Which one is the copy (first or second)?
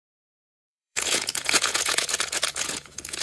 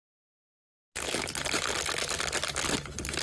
first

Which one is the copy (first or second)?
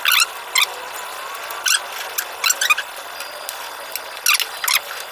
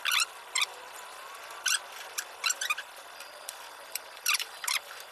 second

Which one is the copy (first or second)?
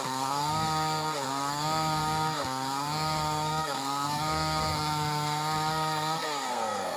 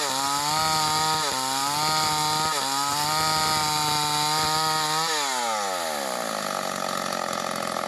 first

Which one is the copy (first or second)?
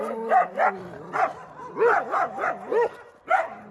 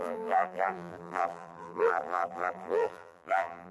second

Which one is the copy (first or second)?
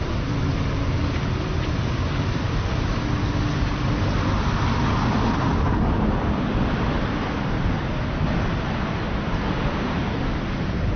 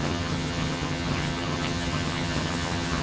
second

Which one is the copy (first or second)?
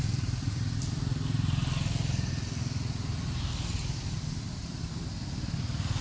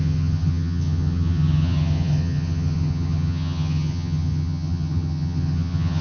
second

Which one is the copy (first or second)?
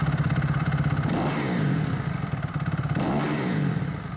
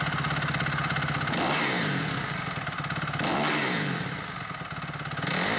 first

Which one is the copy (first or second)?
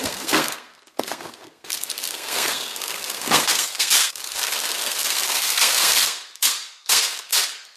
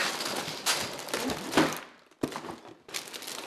first